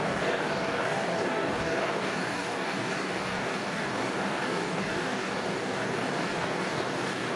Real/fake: fake